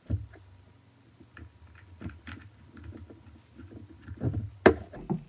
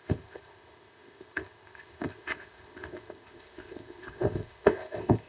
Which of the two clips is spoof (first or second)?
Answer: second